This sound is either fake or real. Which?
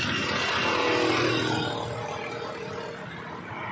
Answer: real